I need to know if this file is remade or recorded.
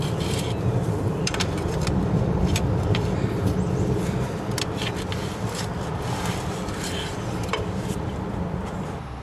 remade